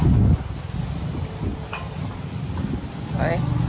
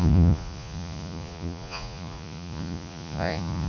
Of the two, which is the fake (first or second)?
second